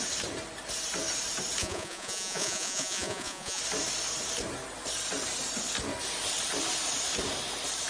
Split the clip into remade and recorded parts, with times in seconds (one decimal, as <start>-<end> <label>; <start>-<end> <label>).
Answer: 0.0-1.6 recorded; 1.6-3.6 remade; 3.6-7.9 recorded